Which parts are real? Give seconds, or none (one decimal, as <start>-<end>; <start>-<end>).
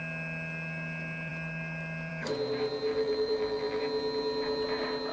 0.0-2.9; 3.8-5.1